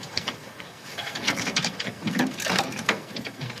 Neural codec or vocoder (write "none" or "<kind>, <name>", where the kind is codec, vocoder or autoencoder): codec, SNAC